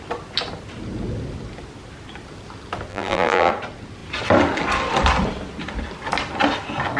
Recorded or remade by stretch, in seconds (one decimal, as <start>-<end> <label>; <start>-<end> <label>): 0.0-2.9 recorded; 2.9-3.5 remade; 3.5-7.0 recorded